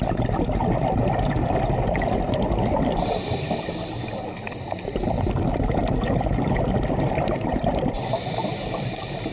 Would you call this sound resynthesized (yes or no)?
no